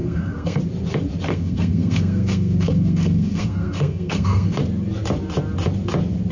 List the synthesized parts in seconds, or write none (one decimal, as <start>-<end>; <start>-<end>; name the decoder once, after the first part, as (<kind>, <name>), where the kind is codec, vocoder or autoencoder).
0.0-0.6 (codec, SNAC); 1.3-4.6